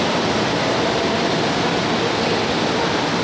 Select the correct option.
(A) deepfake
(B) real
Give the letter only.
B